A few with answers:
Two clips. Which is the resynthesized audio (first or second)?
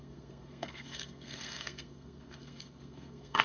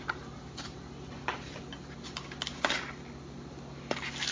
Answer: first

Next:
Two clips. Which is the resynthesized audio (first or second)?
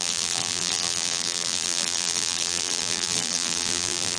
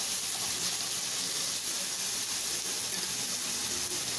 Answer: first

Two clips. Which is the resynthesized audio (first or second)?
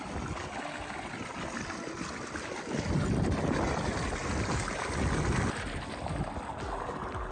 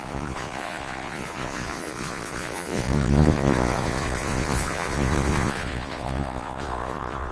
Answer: second